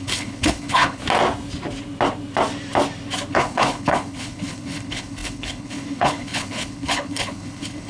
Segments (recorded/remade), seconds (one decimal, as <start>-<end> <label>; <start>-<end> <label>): 0.0-1.0 remade; 1.0-3.3 recorded; 3.3-7.9 remade